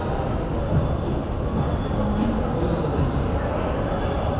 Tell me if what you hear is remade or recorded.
recorded